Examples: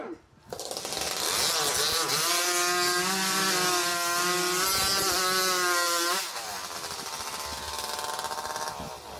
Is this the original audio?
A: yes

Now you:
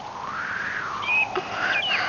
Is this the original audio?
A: yes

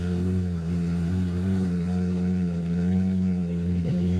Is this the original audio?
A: no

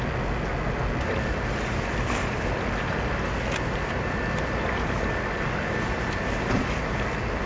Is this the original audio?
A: yes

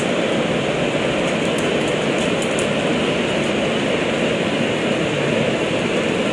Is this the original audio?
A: yes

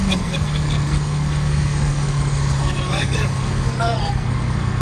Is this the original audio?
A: no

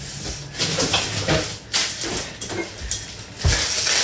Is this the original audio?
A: yes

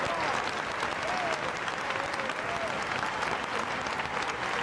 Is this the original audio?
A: yes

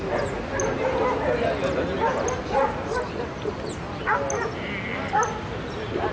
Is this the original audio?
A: yes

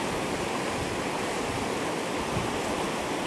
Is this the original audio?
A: yes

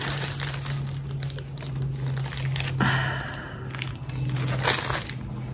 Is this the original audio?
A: yes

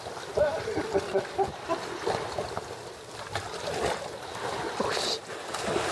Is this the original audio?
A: yes